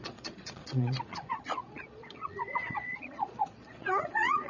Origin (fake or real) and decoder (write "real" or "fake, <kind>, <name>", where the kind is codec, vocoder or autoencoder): fake, vocoder, Vocos